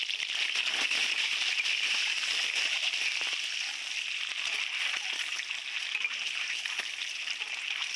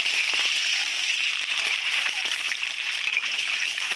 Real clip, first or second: first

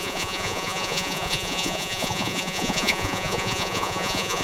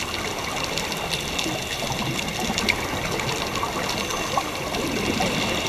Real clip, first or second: second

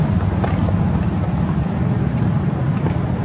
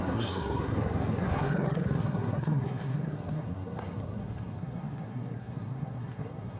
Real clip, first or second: first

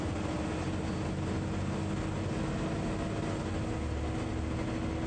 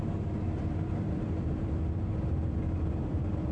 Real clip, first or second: first